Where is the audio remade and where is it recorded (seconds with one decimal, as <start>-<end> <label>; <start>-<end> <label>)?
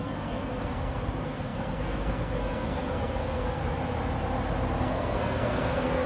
0.0-3.6 remade; 3.6-4.8 recorded; 4.8-6.1 remade